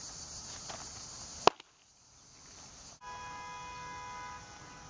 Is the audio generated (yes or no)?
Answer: no